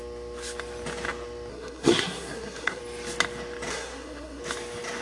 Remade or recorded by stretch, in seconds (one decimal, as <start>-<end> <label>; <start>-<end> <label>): 0.0-1.5 recorded; 1.5-2.8 remade; 2.8-3.7 recorded; 3.7-4.4 remade; 4.4-5.0 recorded